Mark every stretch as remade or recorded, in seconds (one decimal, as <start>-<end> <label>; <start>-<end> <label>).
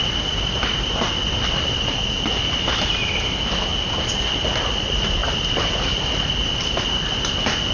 0.0-7.7 recorded